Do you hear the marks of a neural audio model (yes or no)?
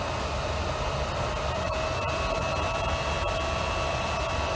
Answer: no